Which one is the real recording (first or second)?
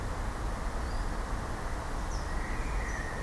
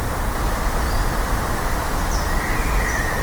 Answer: first